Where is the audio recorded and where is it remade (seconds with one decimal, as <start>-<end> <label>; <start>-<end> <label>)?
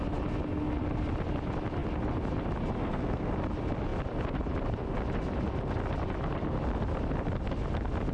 0.0-2.8 recorded; 2.8-3.3 remade; 3.3-8.1 recorded